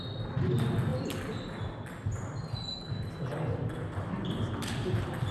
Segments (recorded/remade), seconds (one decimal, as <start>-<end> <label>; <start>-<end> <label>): 0.0-5.3 recorded